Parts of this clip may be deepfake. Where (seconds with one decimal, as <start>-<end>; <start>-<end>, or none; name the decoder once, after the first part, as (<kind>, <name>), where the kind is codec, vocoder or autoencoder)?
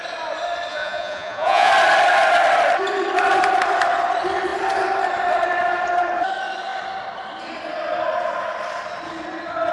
0.7-1.7 (vocoder, Vocos)